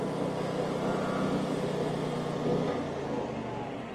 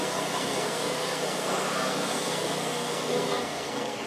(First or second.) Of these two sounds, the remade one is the second